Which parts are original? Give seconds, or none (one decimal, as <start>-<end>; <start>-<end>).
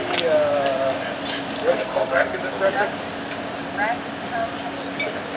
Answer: 0.0-1.7; 2.4-5.4